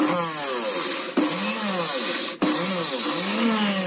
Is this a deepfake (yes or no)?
no